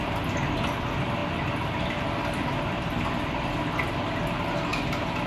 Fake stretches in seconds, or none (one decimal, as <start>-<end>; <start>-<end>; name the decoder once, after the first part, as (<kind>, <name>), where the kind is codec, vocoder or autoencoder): none